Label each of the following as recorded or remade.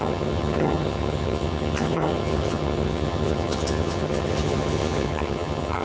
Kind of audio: remade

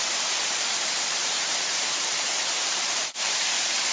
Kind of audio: remade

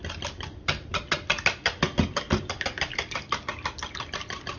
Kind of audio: recorded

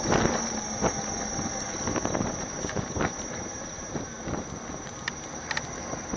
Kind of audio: recorded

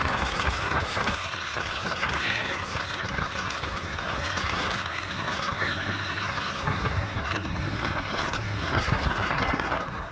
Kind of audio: remade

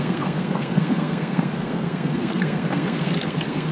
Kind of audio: remade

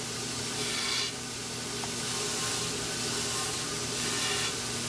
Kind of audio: recorded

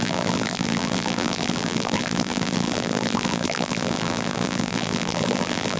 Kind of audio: remade